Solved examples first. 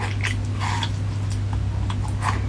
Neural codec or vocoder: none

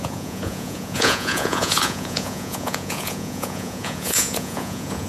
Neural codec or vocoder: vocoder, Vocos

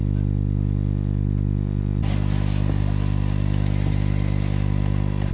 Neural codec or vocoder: none